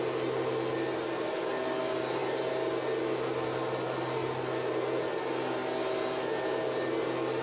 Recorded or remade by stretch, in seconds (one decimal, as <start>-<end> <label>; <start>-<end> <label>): 0.0-7.4 recorded